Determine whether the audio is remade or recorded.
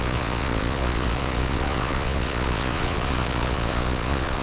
remade